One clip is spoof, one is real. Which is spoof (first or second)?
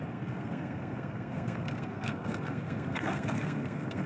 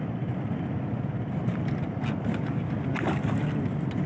first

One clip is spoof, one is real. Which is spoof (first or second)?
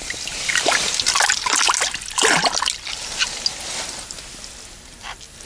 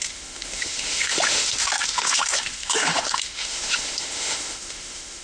second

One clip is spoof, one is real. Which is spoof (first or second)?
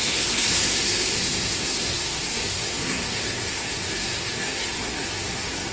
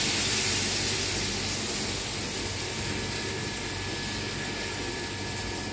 first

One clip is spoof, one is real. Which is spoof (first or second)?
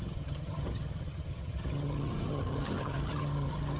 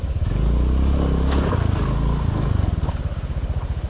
first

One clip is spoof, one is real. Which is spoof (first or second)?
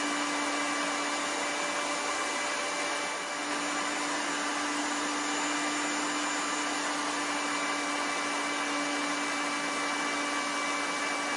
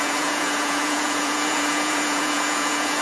second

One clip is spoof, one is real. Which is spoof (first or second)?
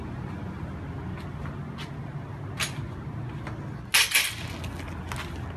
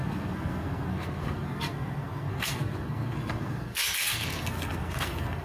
second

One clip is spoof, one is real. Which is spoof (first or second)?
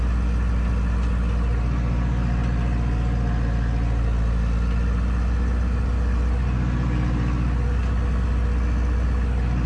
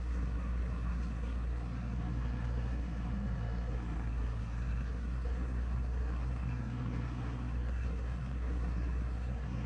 second